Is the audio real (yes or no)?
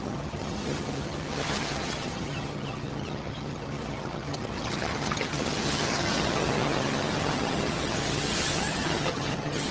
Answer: no